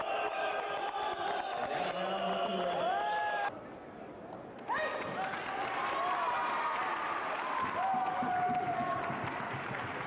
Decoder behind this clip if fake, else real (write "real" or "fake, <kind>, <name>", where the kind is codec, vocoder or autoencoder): real